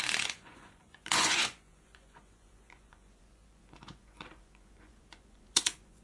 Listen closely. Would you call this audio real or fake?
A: fake